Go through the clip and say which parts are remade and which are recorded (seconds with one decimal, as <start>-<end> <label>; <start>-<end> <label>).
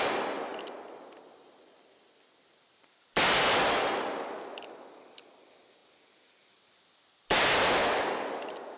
0.0-8.8 recorded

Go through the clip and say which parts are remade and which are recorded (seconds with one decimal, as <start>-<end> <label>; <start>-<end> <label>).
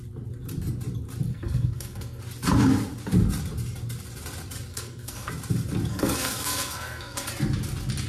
0.0-1.3 recorded; 1.3-2.2 remade; 2.2-4.7 recorded; 4.7-5.3 remade; 5.3-5.9 recorded; 5.9-7.3 remade; 7.3-8.1 recorded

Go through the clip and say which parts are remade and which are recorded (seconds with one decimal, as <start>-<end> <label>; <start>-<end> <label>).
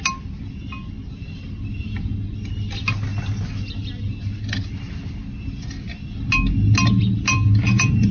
0.0-7.0 recorded; 7.0-8.1 remade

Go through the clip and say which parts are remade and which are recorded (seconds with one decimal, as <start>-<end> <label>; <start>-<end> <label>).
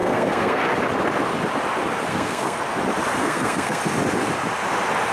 0.0-0.6 remade; 0.6-2.1 recorded; 2.1-2.6 remade; 2.6-3.2 recorded; 3.2-3.8 remade; 3.8-5.1 recorded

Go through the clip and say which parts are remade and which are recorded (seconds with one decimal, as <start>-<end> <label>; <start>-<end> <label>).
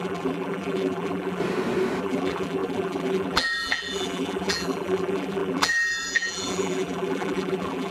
0.0-1.4 remade; 1.4-2.0 recorded; 2.0-7.9 remade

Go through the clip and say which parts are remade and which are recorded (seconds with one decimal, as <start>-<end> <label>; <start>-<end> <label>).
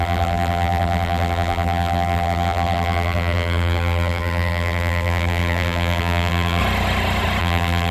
0.0-6.6 remade; 6.6-7.4 recorded; 7.4-7.9 remade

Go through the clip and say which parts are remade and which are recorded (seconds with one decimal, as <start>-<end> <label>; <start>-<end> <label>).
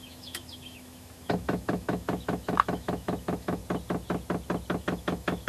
0.0-3.6 remade; 3.6-4.8 recorded; 4.8-5.5 remade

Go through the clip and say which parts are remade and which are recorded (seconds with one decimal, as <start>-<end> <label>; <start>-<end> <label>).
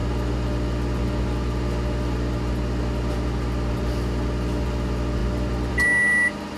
0.0-6.6 recorded